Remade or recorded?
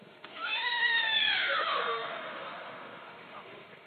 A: remade